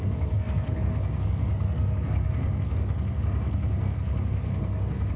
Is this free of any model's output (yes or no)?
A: no